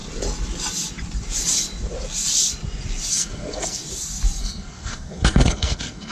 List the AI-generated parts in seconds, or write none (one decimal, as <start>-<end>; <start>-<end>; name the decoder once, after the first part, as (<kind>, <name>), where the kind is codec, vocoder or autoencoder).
3.1-3.8 (codec, SNAC); 4.4-6.1